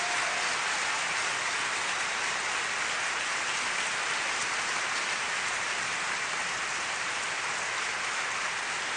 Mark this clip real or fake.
real